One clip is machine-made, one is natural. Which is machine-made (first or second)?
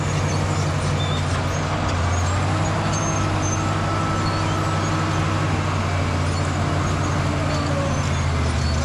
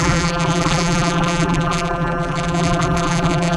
second